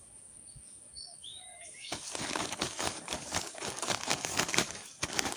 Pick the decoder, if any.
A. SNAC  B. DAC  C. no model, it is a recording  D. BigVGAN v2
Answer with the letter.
B